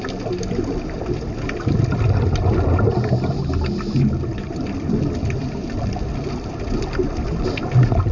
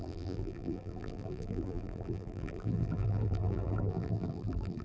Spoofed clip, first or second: second